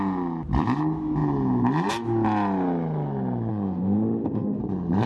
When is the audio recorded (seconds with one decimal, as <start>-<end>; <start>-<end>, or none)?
0.0-3.5; 4.6-5.1